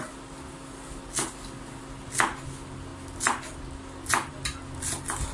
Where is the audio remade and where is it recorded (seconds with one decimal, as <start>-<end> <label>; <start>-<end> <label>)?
0.0-5.3 recorded